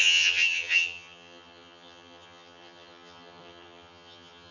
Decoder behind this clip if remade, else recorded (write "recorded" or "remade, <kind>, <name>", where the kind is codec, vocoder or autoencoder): remade, vocoder, HiFi-GAN